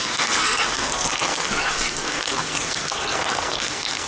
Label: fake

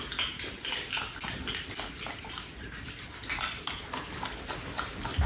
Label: real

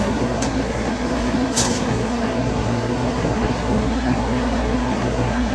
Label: fake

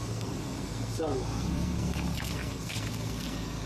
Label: fake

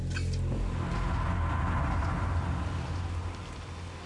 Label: real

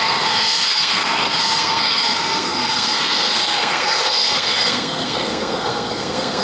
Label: fake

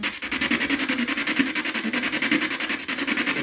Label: real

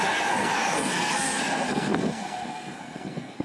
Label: fake